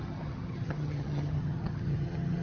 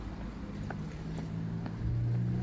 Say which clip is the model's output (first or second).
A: first